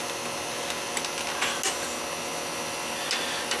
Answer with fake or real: real